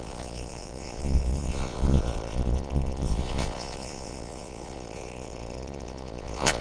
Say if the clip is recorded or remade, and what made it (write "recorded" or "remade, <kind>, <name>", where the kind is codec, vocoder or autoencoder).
remade, vocoder, Vocos